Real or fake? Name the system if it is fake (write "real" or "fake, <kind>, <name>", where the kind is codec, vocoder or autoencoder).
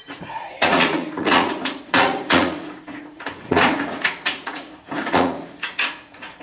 fake, vocoder, Vocos